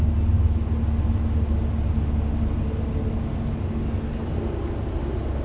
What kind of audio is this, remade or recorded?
recorded